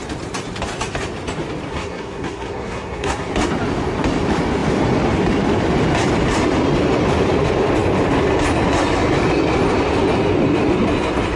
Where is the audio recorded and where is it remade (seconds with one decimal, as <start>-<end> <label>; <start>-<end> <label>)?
0.0-1.7 recorded; 1.7-3.3 remade; 3.3-11.4 recorded

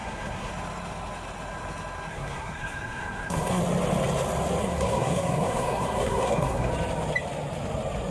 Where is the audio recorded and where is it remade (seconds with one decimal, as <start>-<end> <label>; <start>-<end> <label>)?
0.0-0.5 remade; 0.5-2.1 recorded; 2.1-3.6 remade; 3.6-4.6 recorded; 4.6-6.7 remade; 6.7-8.1 recorded

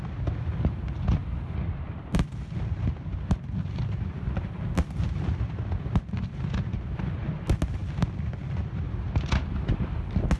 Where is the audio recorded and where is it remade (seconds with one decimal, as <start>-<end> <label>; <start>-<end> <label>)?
0.0-10.4 recorded

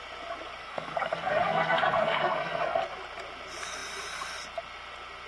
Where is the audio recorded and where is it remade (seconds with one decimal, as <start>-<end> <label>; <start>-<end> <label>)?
0.0-0.6 recorded; 0.6-2.8 remade; 2.8-5.3 recorded

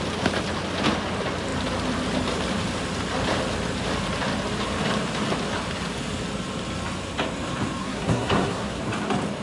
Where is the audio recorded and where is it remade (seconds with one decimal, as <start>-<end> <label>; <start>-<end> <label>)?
0.0-7.8 recorded; 7.8-8.8 remade; 8.8-9.4 recorded

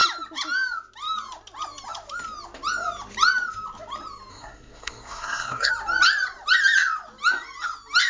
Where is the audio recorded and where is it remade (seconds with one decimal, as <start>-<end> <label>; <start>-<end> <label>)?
0.0-4.3 recorded; 4.3-5.7 remade; 5.7-8.1 recorded